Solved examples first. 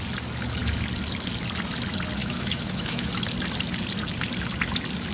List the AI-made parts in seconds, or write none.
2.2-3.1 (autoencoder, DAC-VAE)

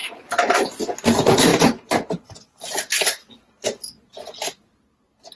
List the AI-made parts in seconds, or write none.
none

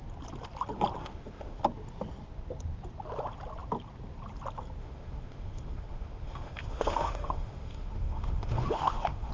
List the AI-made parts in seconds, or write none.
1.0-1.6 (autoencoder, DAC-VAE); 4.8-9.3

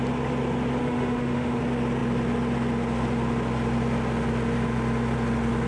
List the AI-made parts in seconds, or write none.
0.8-1.6 (autoencoder, DAC-VAE)